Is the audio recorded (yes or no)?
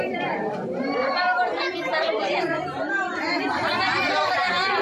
no